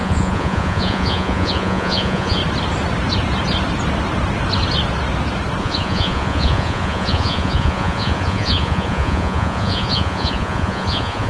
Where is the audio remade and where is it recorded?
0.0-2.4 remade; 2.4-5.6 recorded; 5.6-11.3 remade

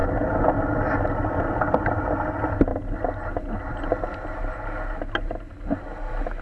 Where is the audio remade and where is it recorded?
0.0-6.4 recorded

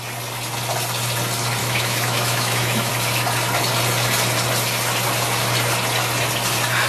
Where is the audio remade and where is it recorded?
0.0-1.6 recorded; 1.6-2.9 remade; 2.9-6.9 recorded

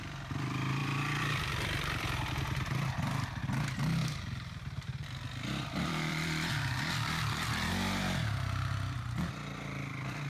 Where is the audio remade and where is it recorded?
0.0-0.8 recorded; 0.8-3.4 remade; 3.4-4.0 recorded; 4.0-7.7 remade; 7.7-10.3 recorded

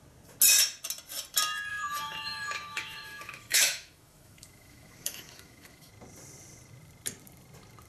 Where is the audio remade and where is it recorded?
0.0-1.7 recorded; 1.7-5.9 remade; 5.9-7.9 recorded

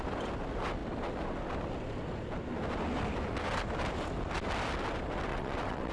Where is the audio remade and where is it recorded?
0.0-5.3 recorded; 5.3-5.9 remade